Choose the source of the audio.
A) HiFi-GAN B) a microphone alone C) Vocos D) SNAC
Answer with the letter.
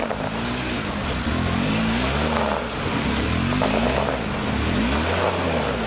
B